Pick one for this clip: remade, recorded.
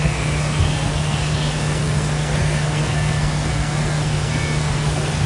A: remade